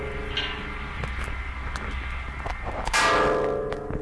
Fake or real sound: real